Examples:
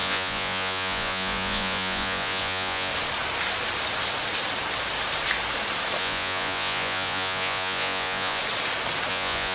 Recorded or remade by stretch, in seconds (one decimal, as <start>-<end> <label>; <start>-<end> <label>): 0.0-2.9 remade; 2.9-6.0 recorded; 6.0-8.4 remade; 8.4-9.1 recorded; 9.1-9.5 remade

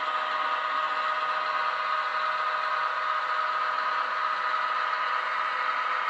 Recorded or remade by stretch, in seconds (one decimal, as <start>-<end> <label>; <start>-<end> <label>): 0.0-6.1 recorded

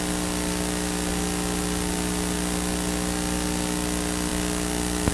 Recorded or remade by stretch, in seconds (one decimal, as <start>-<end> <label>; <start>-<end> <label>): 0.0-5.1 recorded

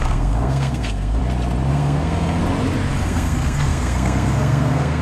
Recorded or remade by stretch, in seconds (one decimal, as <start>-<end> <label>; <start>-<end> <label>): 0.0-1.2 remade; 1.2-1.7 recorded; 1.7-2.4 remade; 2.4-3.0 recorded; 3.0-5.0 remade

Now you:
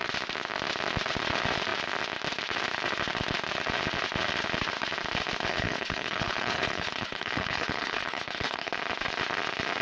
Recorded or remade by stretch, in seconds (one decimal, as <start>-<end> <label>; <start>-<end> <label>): 0.0-5.5 recorded; 5.5-8.7 remade; 8.7-9.8 recorded

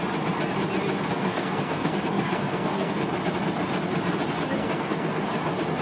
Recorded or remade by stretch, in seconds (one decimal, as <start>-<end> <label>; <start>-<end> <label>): 0.0-1.1 recorded; 1.1-3.0 remade; 3.0-4.6 recorded; 4.6-5.2 remade; 5.2-5.8 recorded